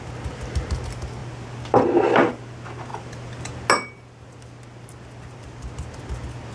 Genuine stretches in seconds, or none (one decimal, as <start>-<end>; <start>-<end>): 0.0-6.5